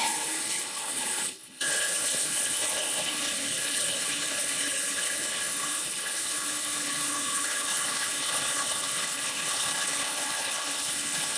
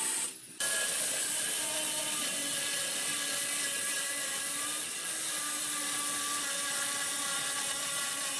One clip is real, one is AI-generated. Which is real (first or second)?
second